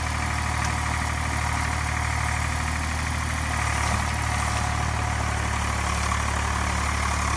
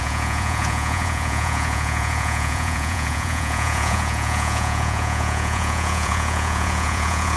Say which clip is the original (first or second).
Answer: first